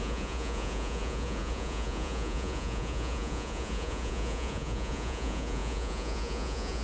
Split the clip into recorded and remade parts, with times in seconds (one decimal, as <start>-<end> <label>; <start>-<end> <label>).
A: 0.0-6.8 remade